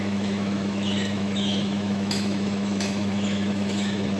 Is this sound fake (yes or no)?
yes